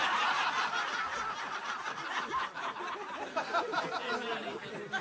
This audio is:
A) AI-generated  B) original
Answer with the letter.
B